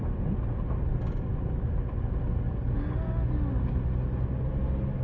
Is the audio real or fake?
real